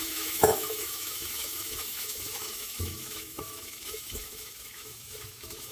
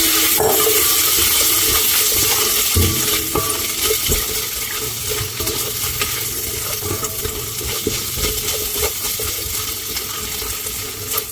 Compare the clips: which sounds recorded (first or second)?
second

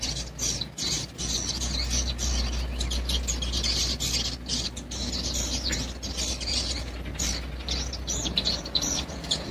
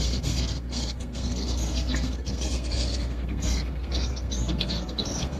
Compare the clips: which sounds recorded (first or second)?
first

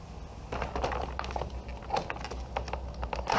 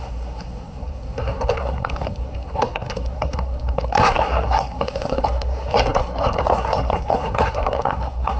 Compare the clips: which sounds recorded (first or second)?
first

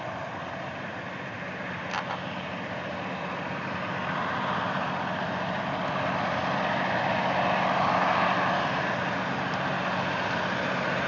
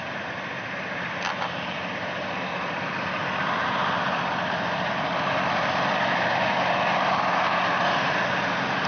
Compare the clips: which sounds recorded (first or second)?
first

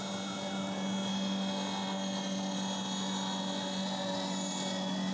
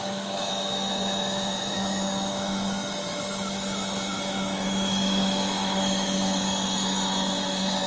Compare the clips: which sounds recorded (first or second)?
first